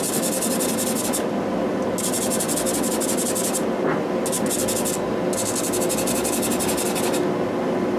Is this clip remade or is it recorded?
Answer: recorded